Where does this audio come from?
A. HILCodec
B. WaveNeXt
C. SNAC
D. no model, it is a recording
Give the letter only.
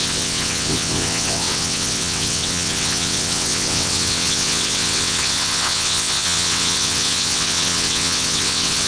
B